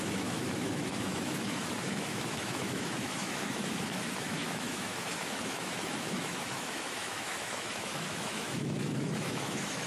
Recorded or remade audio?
remade